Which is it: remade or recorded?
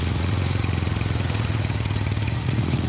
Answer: remade